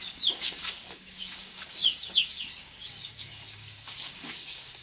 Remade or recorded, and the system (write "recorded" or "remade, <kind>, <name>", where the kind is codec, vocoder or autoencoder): remade, codec, DAC